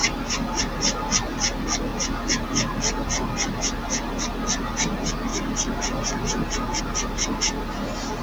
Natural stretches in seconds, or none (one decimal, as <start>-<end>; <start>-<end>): 0.0-8.2